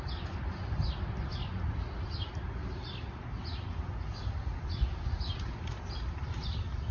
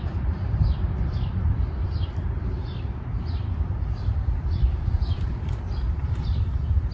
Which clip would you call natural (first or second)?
first